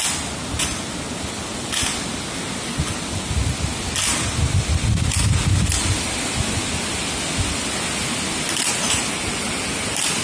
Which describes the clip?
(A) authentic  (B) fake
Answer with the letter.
A